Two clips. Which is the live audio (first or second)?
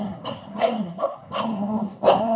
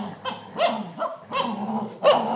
second